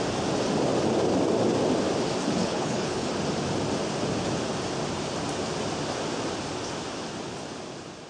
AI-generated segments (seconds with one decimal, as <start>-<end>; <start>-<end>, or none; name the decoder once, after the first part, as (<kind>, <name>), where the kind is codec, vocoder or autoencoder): 2.4-3.1 (codec, HILCodec)